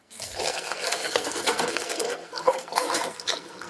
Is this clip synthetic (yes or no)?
yes